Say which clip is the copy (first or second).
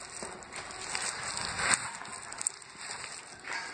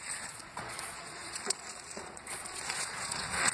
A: second